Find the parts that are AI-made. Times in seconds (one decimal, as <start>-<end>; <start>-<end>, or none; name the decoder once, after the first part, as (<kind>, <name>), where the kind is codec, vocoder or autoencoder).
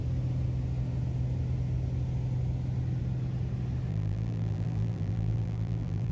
3.9-6.1 (vocoder, BigVGAN v2)